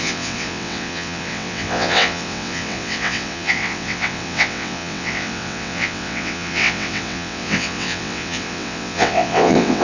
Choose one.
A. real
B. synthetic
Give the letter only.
B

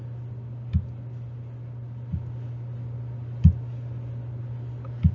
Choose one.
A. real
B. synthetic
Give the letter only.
A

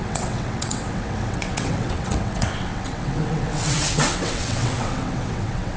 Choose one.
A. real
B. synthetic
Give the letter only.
B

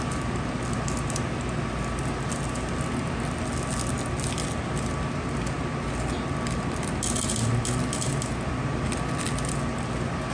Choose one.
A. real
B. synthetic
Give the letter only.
A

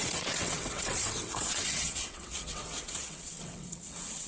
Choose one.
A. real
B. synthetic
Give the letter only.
B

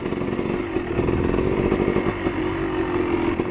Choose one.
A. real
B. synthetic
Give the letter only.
A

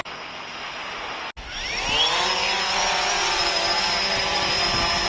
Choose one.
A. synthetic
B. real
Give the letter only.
B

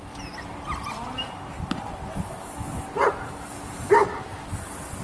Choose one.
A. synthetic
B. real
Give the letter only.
B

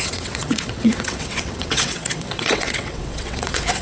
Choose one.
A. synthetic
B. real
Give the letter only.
A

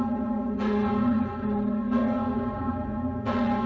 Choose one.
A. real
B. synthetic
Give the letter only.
B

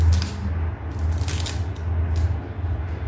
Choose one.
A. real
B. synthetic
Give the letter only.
A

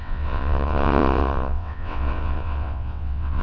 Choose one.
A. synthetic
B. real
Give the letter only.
A